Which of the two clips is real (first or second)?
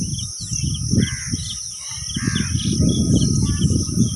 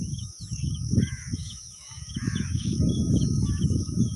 first